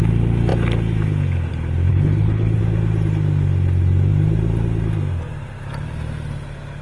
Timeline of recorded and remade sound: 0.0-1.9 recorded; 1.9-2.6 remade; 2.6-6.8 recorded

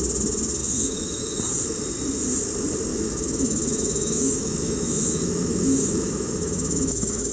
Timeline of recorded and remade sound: 0.0-0.6 recorded; 0.6-1.4 remade; 1.4-2.9 recorded; 2.9-7.3 remade